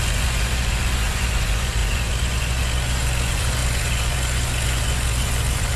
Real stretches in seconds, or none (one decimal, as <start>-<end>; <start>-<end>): none